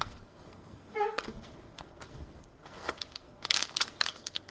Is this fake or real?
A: fake